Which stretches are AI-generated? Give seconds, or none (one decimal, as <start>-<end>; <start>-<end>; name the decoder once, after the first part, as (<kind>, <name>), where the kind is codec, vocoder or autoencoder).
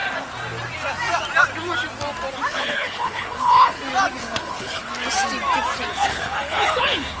2.5-3.8 (codec, HILCodec); 4.2-4.9; 5.9-7.2